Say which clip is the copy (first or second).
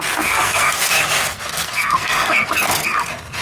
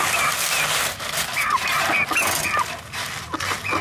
first